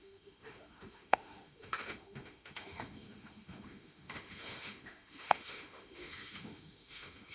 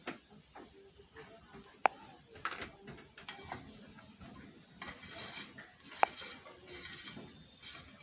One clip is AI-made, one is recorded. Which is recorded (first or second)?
second